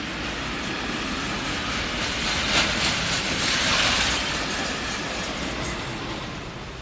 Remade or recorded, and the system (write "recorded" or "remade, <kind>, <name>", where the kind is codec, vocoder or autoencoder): remade, vocoder, BigVGAN v2